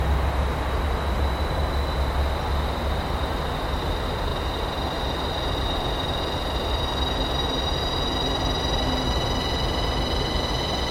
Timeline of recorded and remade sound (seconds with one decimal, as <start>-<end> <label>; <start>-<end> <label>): 0.0-10.9 recorded